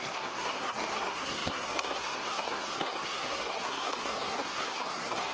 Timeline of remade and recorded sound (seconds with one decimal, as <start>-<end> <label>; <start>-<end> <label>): 0.0-5.3 remade